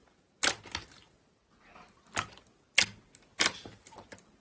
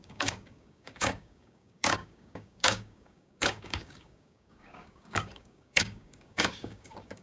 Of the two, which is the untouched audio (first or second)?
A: first